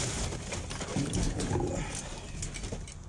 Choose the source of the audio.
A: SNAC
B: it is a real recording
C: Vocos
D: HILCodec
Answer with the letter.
B